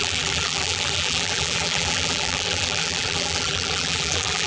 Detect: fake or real fake